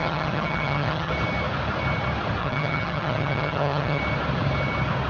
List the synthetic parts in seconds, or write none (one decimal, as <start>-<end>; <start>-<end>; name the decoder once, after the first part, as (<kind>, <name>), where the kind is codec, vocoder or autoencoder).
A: 0.0-1.1 (vocoder, HiFi-GAN); 2.4-4.0